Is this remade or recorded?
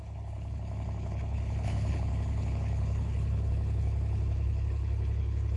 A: remade